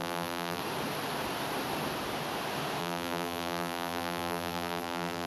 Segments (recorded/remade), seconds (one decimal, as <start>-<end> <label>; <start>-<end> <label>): 0.0-0.6 remade; 0.6-2.8 recorded; 2.8-5.3 remade